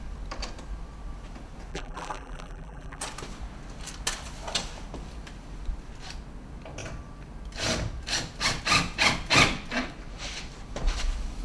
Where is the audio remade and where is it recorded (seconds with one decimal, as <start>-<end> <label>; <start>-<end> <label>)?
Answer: 0.0-1.7 recorded; 1.7-3.0 remade; 3.0-11.4 recorded